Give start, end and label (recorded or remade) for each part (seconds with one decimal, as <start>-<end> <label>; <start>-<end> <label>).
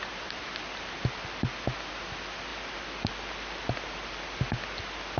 0.0-5.2 recorded